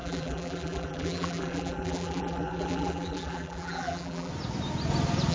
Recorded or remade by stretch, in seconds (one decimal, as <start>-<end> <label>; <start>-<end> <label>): 0.0-4.3 remade; 4.3-5.3 recorded

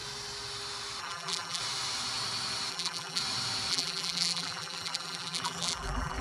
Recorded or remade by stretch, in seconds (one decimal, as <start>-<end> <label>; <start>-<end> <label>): 0.0-1.0 recorded; 1.0-1.6 remade; 1.6-2.7 recorded; 2.7-3.2 remade; 3.2-3.7 recorded; 3.7-6.2 remade